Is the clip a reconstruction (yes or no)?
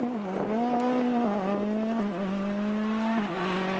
no